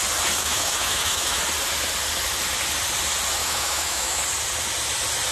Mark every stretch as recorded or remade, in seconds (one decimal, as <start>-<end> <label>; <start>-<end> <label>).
0.0-0.4 recorded; 0.4-1.4 remade; 1.4-3.4 recorded; 3.4-4.2 remade; 4.2-5.3 recorded